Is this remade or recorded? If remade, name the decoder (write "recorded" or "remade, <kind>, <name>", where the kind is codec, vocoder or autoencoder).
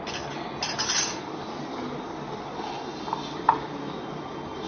recorded